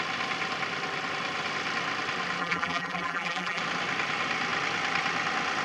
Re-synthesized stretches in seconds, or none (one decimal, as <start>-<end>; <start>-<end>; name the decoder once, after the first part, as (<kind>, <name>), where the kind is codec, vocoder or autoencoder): 2.4-3.6 (vocoder, BigVGAN v2)